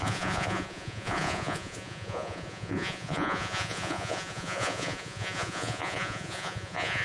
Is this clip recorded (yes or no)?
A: no